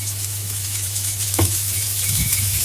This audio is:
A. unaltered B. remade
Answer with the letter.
B